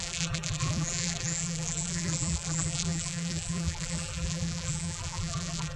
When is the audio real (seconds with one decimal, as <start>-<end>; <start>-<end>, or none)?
none